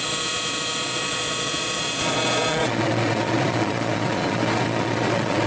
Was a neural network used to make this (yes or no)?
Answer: yes